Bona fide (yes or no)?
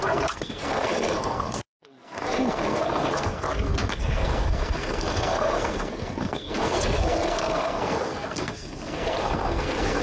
no